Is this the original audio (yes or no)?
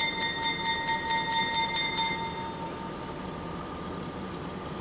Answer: yes